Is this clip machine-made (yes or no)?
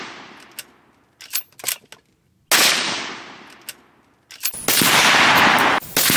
no